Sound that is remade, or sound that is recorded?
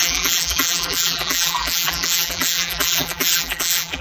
remade